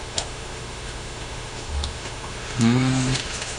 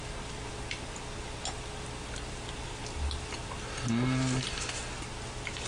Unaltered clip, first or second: second